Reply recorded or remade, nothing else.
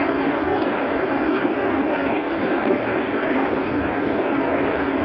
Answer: remade